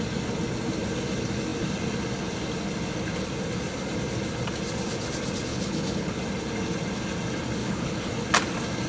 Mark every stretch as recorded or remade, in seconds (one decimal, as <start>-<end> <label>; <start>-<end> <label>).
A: 0.0-5.5 recorded; 5.5-6.2 remade; 6.2-7.6 recorded; 7.6-8.1 remade; 8.1-8.9 recorded